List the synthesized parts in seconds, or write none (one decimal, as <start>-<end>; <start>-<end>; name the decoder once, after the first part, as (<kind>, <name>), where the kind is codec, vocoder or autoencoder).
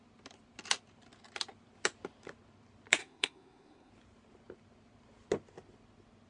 3.0-3.9 (codec, SNAC)